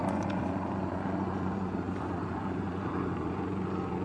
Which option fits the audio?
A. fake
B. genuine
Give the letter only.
A